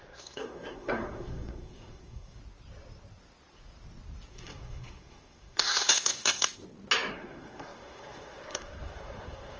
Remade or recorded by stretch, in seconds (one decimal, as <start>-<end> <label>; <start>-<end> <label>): 0.0-2.4 remade; 2.4-4.3 recorded; 4.3-6.6 remade; 6.6-7.1 recorded; 7.1-9.6 remade